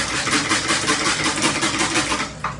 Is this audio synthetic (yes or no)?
no